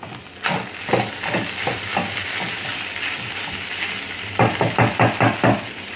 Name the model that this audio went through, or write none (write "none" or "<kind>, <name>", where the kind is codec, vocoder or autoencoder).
none